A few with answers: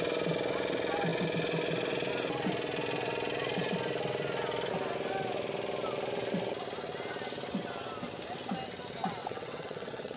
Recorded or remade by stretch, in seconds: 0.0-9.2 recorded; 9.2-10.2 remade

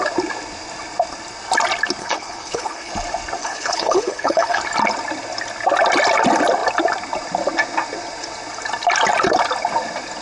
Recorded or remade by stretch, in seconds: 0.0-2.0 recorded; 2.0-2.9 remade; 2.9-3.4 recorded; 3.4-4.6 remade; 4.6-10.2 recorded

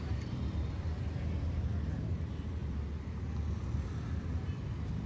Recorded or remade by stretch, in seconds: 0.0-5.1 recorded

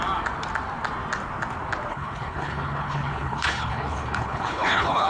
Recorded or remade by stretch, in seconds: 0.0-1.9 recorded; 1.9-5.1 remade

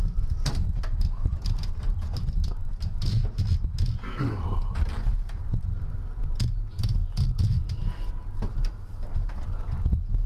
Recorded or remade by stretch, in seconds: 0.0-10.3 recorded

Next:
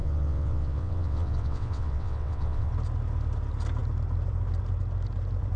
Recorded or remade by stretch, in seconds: 0.0-2.7 remade; 2.7-5.6 recorded

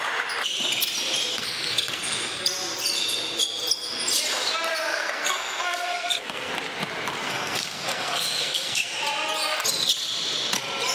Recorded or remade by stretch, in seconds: 0.0-1.3 recorded; 1.3-2.4 remade; 2.4-4.9 recorded; 4.9-6.5 remade; 6.5-7.2 recorded; 7.2-9.0 remade; 9.0-10.9 recorded

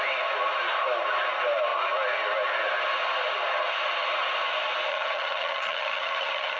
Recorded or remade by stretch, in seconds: 0.0-4.9 recorded; 4.9-6.6 remade